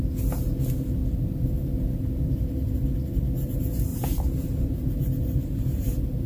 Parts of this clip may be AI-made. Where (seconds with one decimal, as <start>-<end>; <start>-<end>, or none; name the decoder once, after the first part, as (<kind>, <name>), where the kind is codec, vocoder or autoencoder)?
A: 3.9-6.3 (vocoder, BigVGAN v2)